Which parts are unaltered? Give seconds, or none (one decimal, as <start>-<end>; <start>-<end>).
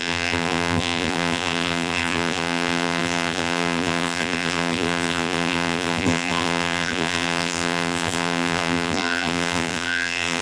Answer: none